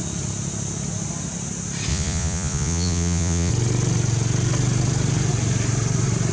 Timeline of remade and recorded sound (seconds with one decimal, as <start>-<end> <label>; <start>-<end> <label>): 0.0-1.9 recorded; 1.9-3.5 remade; 3.5-6.3 recorded